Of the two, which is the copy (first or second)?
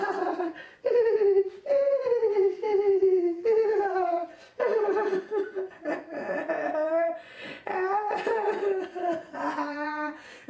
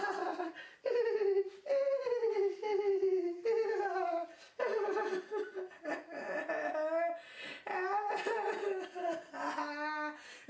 first